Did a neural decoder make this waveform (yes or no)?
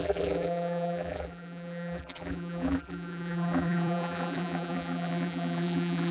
yes